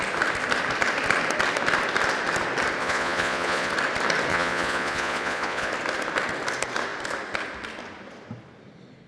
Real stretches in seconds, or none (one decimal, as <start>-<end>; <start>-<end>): 0.0-2.8; 3.7-4.3; 5.7-9.1